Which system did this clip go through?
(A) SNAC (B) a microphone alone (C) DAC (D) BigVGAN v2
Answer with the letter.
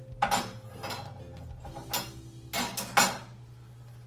B